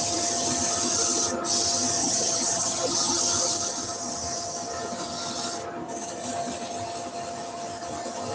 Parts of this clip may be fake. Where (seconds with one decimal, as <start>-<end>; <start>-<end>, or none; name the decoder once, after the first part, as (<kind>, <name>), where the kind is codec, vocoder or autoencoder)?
2.0-3.2 (vocoder, HiFi-GAN)